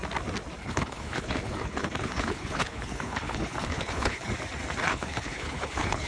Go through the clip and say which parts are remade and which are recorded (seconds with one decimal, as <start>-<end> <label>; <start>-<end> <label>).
0.0-0.6 recorded; 0.6-4.3 remade; 4.3-4.8 recorded; 4.8-6.1 remade